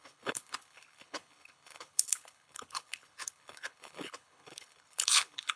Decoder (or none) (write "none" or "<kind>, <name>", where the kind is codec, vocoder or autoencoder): codec, HILCodec